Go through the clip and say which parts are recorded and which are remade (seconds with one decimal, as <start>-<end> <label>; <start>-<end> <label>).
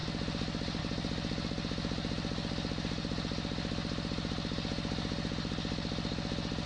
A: 0.0-6.7 recorded